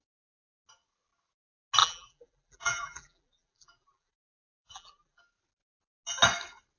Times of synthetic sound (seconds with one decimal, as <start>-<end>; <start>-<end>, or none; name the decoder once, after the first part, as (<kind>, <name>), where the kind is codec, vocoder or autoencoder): 1.8-5.2 (vocoder, BigVGAN v2)